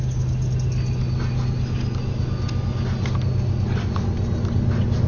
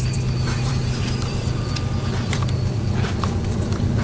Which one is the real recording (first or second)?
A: first